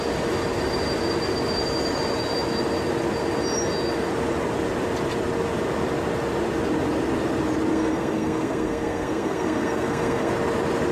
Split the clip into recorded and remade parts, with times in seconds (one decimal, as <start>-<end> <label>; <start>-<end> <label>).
0.0-7.7 recorded; 7.7-10.3 remade; 10.3-10.9 recorded